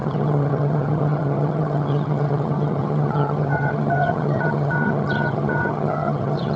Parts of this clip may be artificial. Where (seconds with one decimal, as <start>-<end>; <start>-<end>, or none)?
0.0-6.6